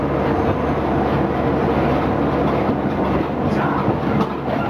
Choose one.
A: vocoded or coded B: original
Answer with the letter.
B